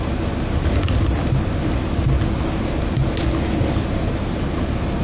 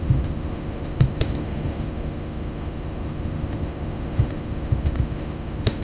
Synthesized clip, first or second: second